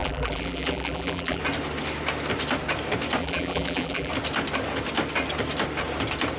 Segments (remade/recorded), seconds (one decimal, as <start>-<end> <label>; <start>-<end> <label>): 0.0-1.4 remade; 1.4-3.2 recorded; 3.2-4.1 remade; 4.1-6.4 recorded